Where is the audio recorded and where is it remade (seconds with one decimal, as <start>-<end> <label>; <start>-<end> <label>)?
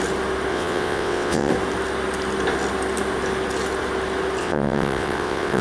0.0-0.5 recorded; 0.5-1.5 remade; 1.5-4.4 recorded; 4.4-5.6 remade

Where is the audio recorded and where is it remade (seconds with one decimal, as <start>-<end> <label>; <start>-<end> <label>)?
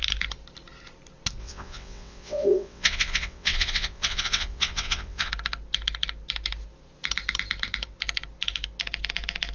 0.0-1.4 recorded; 1.4-5.3 remade; 5.3-9.5 recorded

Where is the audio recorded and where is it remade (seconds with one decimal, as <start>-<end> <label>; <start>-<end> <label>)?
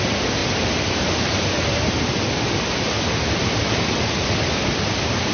0.0-5.3 recorded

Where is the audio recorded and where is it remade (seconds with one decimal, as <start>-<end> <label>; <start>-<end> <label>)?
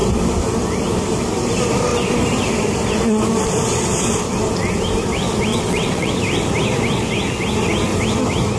0.0-5.5 recorded; 5.5-6.1 remade; 6.1-8.6 recorded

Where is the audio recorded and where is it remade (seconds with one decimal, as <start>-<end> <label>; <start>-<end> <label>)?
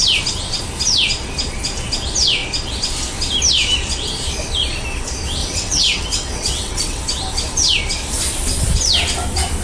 0.0-5.4 recorded; 5.4-7.0 remade; 7.0-9.6 recorded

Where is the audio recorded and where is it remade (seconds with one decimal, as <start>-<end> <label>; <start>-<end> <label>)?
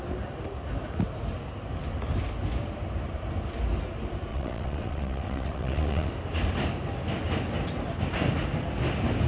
0.0-4.3 recorded; 4.3-6.1 remade; 6.1-9.3 recorded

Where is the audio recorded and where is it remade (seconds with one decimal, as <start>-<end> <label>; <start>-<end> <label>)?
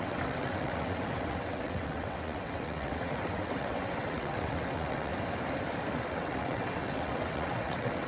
0.0-5.1 remade; 5.1-6.1 recorded; 6.1-8.1 remade